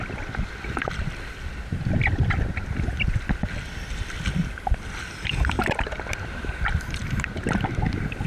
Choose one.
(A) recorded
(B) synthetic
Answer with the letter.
A